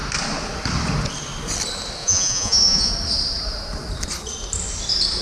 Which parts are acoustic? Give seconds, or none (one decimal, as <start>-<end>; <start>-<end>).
0.0-2.0; 2.9-5.2